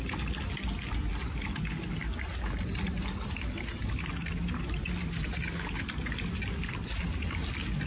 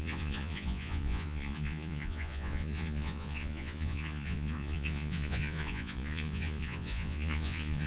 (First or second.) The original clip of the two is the first